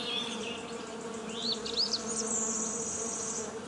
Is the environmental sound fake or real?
real